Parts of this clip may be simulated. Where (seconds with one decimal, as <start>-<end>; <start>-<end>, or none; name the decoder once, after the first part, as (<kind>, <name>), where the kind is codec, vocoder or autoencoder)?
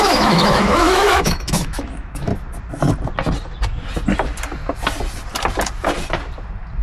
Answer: 0.0-2.3 (autoencoder, DAC-VAE)